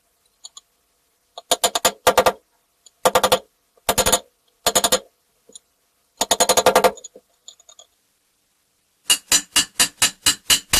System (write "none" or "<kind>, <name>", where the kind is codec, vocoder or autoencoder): none